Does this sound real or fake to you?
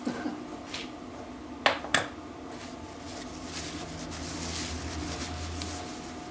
real